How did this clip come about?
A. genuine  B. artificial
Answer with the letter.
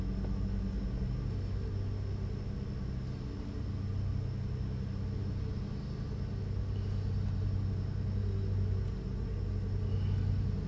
A